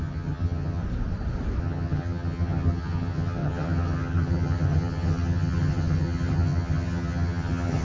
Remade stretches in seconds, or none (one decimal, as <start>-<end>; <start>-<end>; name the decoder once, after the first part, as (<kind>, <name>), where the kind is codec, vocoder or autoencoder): 0.0-0.8 (vocoder, HiFi-GAN); 1.6-7.8